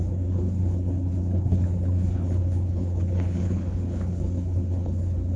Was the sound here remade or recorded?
remade